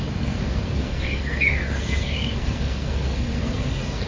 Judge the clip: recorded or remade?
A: remade